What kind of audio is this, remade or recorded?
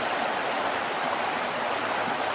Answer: recorded